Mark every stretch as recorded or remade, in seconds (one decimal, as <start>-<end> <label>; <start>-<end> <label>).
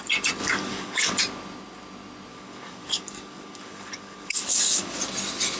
0.0-0.4 recorded; 0.4-1.2 remade; 1.2-2.3 recorded; 2.3-4.9 remade; 4.9-5.6 recorded